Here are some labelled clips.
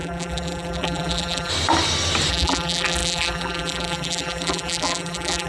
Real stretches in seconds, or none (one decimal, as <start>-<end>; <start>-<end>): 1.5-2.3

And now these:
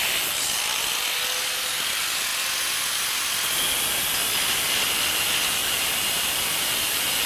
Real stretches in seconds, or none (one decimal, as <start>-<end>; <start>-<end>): 0.0-5.6; 6.8-7.3

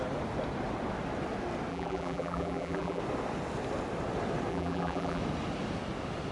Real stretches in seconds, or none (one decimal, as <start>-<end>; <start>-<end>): 0.0-1.7; 3.0-4.5; 5.2-6.3

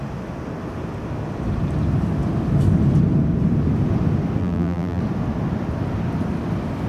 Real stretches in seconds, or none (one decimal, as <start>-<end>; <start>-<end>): 0.0-4.4; 5.0-6.9

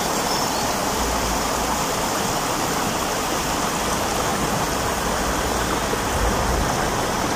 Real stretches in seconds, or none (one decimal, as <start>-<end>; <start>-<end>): 0.0-0.8; 2.2-7.4

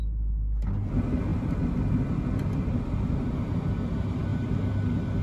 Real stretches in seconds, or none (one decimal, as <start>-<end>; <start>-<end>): 0.0-5.2

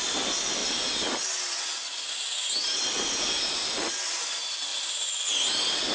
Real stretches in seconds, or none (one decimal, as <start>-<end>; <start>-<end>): 0.0-5.9